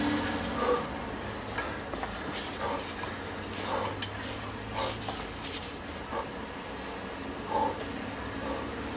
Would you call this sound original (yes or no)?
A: yes